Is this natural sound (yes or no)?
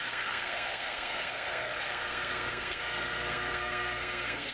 no